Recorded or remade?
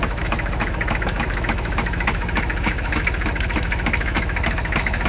remade